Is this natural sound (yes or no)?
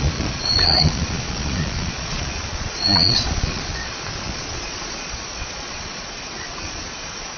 no